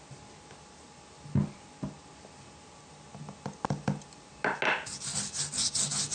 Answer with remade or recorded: recorded